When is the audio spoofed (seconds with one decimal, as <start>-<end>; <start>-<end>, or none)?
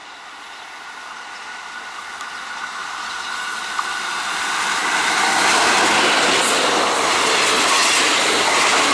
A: none